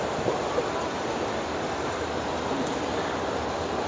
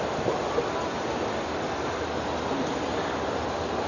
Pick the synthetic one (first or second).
first